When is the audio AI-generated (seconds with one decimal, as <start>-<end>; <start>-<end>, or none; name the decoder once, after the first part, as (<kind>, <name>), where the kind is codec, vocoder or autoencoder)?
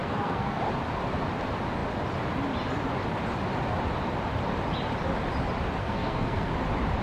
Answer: 0.0-0.6 (codec, SNAC); 5.8-6.5